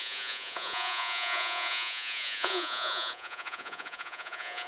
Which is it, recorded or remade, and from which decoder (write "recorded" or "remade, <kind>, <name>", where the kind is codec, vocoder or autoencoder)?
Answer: remade, vocoder, Vocos